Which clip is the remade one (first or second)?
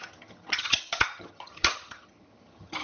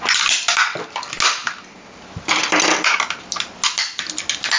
first